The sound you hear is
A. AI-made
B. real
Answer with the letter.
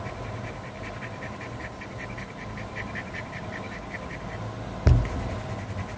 B